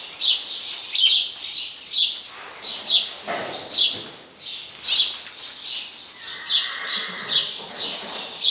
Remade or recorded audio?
recorded